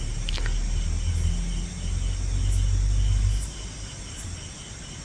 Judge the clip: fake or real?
real